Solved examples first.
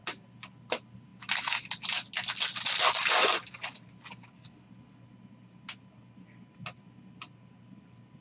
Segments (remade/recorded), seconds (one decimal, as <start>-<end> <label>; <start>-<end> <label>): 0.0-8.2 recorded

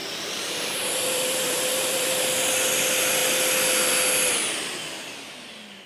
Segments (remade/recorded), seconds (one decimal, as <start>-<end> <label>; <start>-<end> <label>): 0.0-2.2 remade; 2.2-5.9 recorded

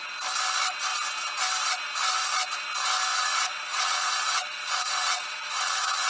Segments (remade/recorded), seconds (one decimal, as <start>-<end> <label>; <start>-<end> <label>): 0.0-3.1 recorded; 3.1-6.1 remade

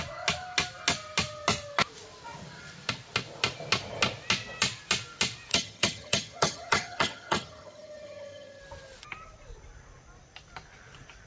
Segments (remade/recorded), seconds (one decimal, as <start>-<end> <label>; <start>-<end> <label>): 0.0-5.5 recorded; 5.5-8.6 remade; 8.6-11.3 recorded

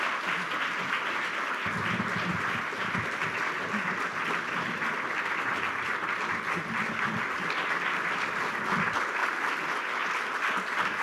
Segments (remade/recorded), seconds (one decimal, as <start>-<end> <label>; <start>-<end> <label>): 0.0-11.0 recorded

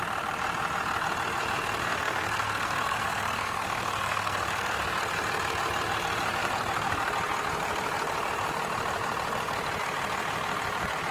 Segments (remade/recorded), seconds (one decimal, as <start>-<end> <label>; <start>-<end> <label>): 0.0-1.8 recorded; 1.8-4.8 remade; 4.8-11.1 recorded

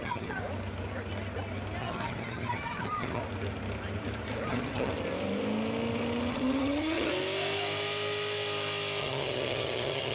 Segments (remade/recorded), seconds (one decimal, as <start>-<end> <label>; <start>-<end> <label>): 0.0-0.4 remade; 0.4-1.8 recorded; 1.8-3.2 remade; 3.2-4.5 recorded; 4.5-4.9 remade; 4.9-6.3 recorded; 6.3-7.1 remade; 7.1-9.0 recorded; 9.0-10.1 remade

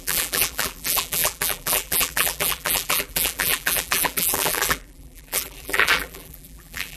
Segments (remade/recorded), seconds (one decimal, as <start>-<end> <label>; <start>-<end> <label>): 0.0-7.0 remade